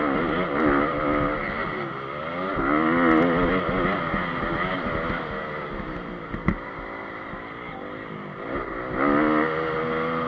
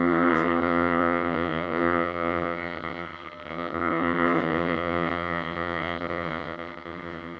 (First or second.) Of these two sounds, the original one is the first